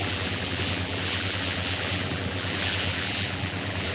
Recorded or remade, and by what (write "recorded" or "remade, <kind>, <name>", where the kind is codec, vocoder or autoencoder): remade, vocoder, BigVGAN v2